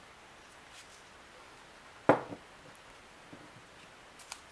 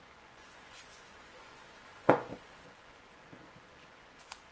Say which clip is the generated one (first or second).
second